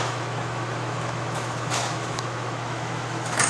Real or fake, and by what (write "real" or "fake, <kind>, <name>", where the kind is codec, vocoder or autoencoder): fake, autoencoder, DAC-VAE